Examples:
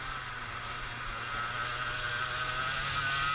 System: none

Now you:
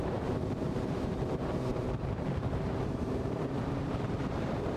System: vocoder, BigVGAN v2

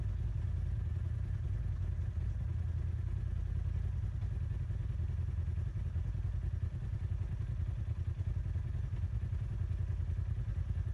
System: none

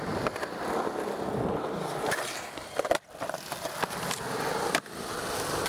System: vocoder, BigVGAN v2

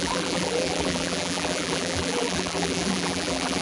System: vocoder, BigVGAN v2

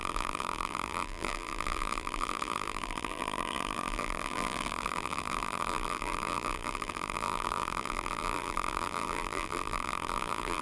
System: vocoder, BigVGAN v2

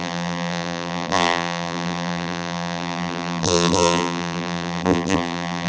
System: vocoder, BigVGAN v2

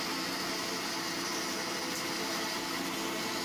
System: vocoder, BigVGAN v2